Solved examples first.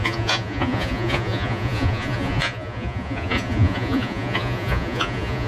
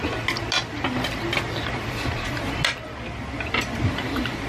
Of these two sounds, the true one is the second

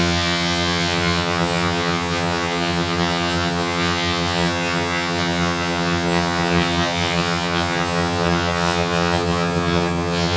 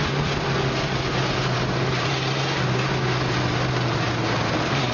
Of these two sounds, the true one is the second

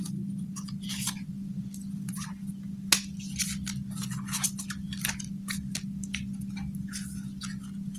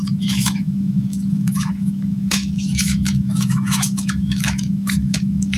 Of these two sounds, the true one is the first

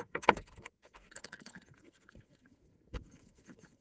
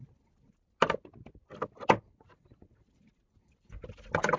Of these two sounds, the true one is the second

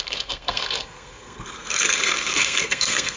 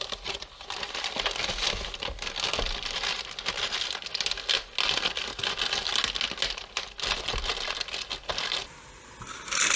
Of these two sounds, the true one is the second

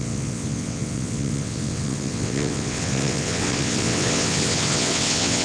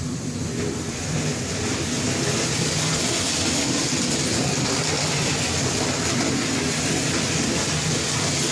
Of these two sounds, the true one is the second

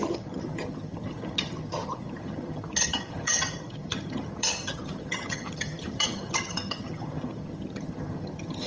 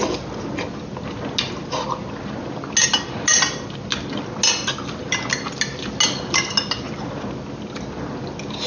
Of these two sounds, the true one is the second